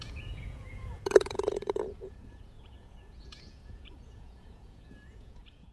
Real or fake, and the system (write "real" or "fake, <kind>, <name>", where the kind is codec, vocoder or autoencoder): fake, vocoder, Vocos